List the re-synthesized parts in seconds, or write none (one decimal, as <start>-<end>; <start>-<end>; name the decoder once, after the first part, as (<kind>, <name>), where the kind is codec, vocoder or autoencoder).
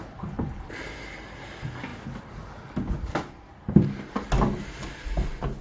none